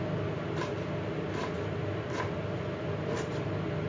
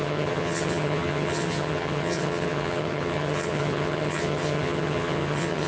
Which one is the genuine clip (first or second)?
first